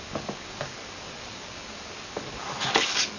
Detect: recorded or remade remade